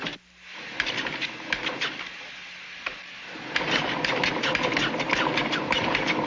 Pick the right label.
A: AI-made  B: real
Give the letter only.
B